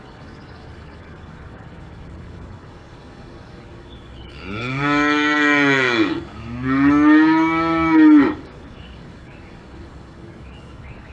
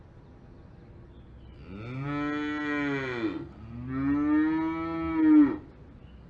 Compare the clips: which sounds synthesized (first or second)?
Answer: first